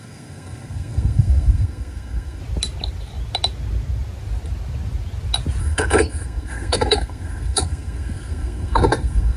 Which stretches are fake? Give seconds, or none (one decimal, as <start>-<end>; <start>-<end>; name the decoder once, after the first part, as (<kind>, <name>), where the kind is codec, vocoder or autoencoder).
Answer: 0.0-2.4 (codec, SNAC); 5.6-9.4